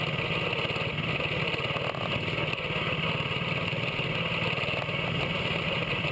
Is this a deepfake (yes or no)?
no